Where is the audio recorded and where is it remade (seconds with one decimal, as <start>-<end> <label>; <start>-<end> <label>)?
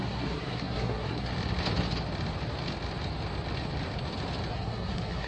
0.0-1.3 remade; 1.3-4.5 recorded; 4.5-5.3 remade